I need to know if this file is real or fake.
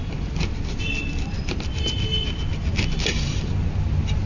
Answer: real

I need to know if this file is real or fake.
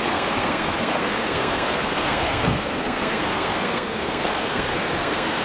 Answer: fake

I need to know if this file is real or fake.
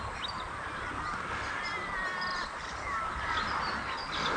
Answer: real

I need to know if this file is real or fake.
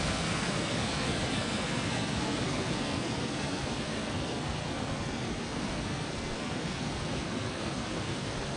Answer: fake